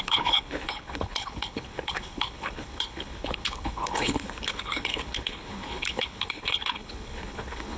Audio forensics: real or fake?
fake